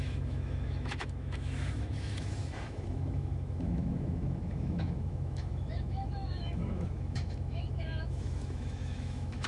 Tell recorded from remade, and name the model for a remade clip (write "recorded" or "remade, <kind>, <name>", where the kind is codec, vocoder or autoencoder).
remade, autoencoder, DAC-VAE